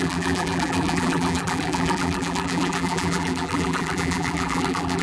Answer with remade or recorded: remade